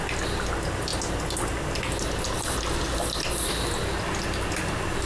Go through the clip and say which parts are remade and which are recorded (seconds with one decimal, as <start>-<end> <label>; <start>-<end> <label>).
0.0-5.1 recorded